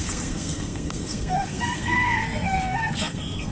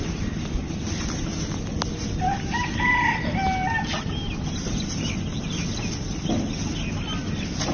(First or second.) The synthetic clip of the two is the first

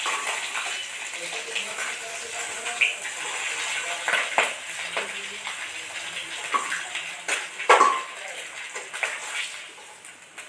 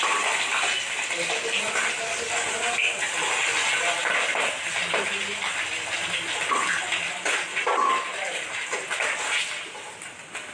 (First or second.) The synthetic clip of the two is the second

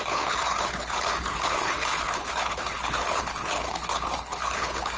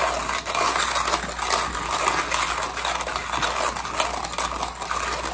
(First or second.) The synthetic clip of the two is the first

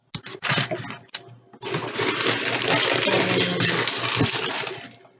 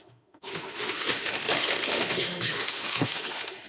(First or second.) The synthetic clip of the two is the second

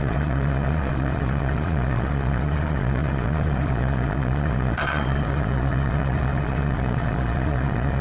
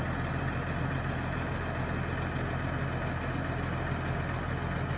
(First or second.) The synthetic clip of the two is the first